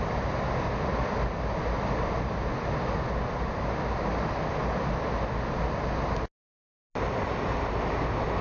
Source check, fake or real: real